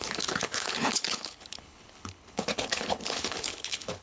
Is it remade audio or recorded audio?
remade